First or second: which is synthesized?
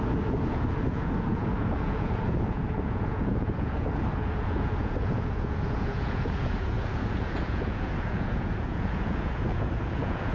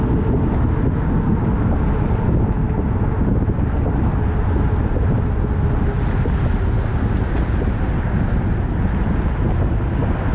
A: first